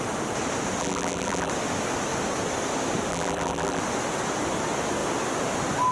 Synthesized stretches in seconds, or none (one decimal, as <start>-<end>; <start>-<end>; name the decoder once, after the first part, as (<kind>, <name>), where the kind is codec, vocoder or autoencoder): 0.8-1.5 (vocoder, BigVGAN v2); 3.1-3.8